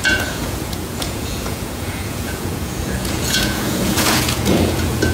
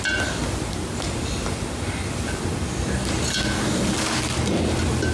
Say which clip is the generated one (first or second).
first